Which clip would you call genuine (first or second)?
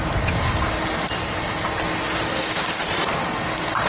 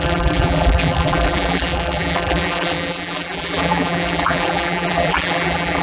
first